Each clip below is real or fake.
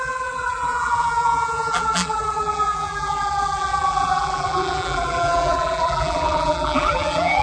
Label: fake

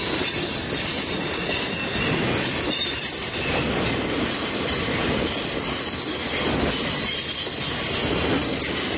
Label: real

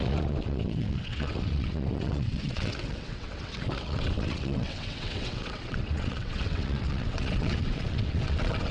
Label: fake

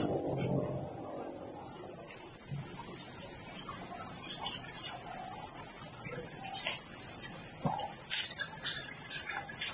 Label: real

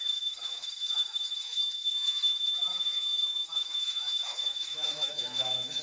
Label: fake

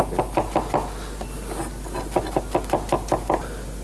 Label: real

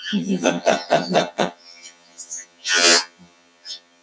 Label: fake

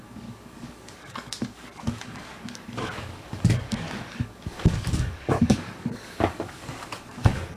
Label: fake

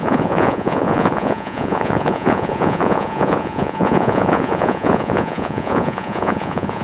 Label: fake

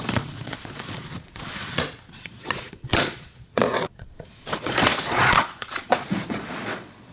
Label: fake